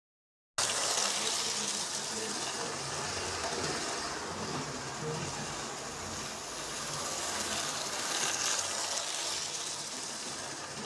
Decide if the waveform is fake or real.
real